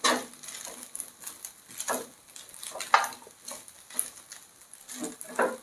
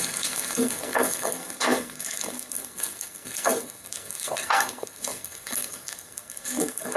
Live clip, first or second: first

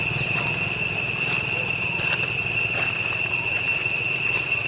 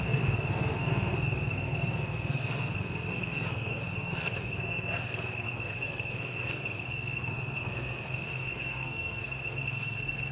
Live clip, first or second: first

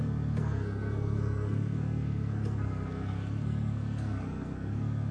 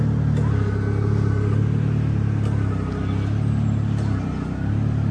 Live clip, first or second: second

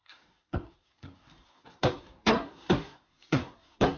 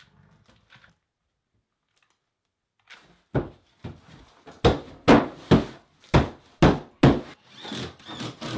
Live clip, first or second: second